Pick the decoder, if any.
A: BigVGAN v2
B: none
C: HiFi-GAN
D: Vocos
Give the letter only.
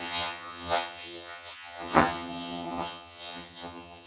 C